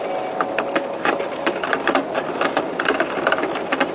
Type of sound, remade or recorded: recorded